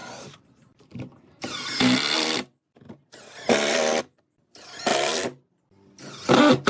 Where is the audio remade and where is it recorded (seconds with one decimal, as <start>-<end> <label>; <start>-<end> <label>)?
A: 0.0-4.0 remade; 4.0-6.7 recorded